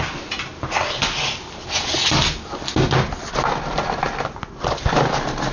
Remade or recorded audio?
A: recorded